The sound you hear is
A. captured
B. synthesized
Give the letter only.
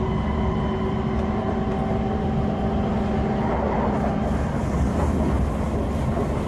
A